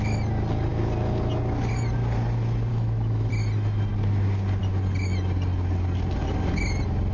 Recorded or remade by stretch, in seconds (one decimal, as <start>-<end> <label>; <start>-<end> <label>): 0.0-2.7 recorded; 2.7-3.3 remade; 3.3-7.1 recorded